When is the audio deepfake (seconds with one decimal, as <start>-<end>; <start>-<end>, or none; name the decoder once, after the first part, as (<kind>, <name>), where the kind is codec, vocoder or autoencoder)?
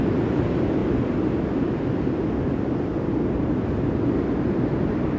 none